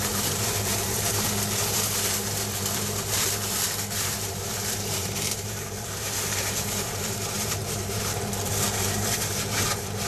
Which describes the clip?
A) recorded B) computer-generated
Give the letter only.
B